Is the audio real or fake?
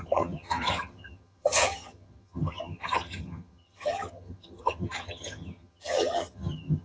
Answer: fake